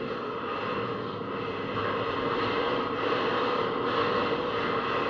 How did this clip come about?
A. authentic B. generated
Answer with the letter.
A